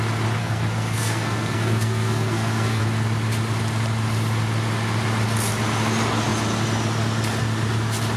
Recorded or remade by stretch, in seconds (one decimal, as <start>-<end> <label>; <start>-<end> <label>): 0.0-0.4 recorded; 0.4-2.8 remade; 2.8-8.2 recorded